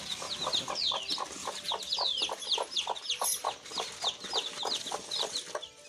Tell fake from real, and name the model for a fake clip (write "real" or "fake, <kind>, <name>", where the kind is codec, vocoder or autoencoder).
real